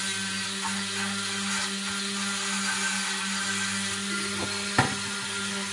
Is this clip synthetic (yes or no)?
no